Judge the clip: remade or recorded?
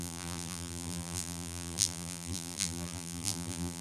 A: remade